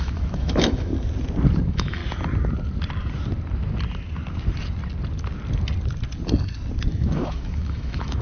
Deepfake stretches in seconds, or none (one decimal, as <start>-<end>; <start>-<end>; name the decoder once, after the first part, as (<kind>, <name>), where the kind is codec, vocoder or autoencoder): 0.0-0.9 (autoencoder, DAC-VAE); 1.6-2.0; 6.9-8.2